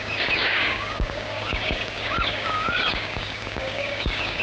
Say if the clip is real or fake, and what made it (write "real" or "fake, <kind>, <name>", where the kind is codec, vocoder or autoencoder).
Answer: fake, codec, DAC